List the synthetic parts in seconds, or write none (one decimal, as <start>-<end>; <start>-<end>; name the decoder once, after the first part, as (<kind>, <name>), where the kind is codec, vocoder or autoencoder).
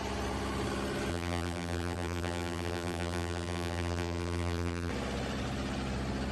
1.1-4.9 (vocoder, BigVGAN v2)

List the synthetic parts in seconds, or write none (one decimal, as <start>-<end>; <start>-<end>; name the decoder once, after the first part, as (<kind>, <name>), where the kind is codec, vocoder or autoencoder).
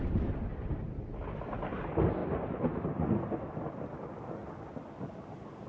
0.5-1.0 (vocoder, BigVGAN v2)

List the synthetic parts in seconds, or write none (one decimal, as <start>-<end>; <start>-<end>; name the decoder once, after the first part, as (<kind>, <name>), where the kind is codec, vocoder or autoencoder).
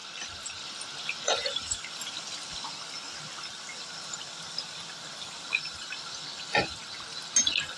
none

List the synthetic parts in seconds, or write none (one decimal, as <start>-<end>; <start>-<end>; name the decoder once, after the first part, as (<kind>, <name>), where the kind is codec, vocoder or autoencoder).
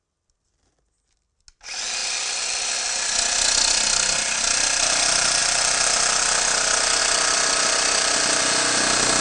none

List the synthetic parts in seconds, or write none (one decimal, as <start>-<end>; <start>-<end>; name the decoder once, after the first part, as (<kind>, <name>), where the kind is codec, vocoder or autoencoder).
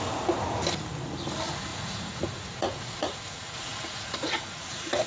1.7-5.1 (vocoder, Vocos)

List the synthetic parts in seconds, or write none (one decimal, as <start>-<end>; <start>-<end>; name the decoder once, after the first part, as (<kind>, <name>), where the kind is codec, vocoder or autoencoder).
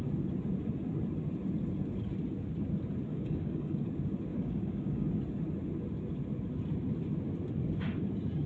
3.1-3.8 (codec, DAC); 4.3-5.2